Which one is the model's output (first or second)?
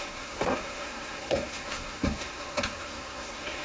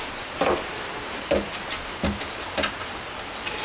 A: first